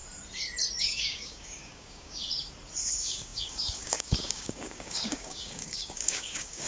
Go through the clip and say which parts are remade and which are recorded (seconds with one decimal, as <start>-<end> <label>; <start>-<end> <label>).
0.0-0.8 recorded; 0.8-2.2 remade; 2.2-2.9 recorded; 2.9-6.7 remade